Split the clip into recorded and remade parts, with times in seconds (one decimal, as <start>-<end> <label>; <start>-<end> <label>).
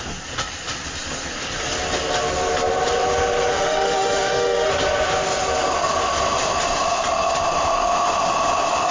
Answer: 0.0-3.5 recorded; 3.5-4.7 remade; 4.7-8.9 recorded